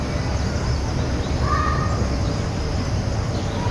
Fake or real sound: real